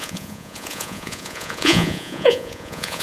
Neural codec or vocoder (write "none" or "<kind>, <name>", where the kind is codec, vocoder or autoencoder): vocoder, Vocos